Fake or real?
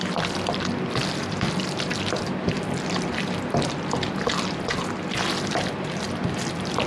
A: fake